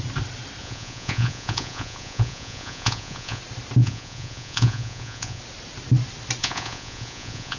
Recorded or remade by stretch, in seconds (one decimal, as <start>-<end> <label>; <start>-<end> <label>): 0.0-0.6 recorded; 0.6-3.4 remade; 3.4-3.8 recorded; 3.8-5.4 remade; 5.4-6.4 recorded; 6.4-7.6 remade